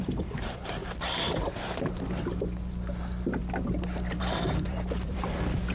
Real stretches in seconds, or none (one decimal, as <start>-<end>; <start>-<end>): 3.4-4.2